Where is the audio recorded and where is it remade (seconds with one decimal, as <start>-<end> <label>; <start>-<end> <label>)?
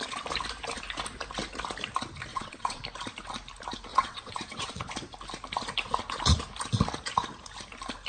0.0-2.3 recorded; 2.3-2.8 remade; 2.8-3.9 recorded; 3.9-4.9 remade; 4.9-8.1 recorded